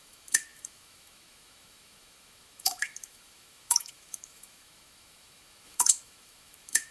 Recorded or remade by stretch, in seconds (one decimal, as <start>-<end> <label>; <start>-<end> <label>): 0.0-6.9 remade